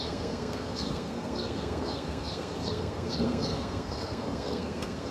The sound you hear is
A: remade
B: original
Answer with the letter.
A